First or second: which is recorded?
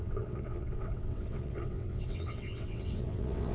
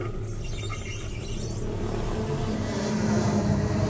second